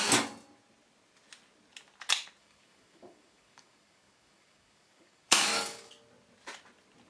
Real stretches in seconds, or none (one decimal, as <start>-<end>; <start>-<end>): 0.0-2.4; 5.9-7.1